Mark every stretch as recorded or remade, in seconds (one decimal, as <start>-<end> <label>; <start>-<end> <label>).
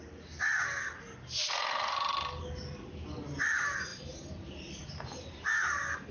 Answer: 0.0-3.9 recorded; 3.9-6.1 remade